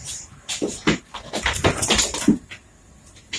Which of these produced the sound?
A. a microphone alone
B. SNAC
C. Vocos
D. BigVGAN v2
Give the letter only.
A